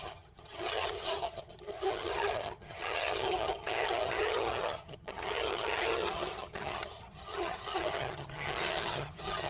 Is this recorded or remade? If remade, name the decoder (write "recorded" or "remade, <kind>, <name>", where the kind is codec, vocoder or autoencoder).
remade, vocoder, HiFi-GAN